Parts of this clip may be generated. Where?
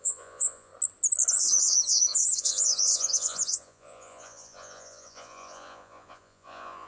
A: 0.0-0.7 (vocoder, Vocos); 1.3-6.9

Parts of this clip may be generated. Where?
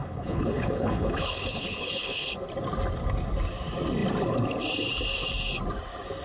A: 0.0-2.3 (codec, HILCodec)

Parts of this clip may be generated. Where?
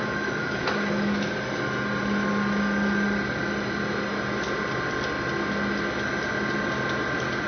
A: 0.0-1.3 (autoencoder, DAC-VAE)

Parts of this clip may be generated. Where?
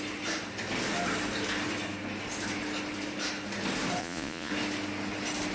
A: 4.0-4.5 (vocoder, Vocos)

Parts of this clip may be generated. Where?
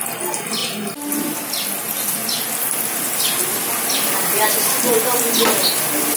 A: none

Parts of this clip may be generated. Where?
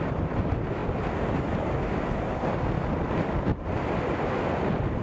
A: none